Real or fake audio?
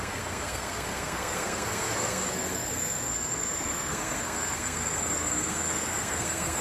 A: fake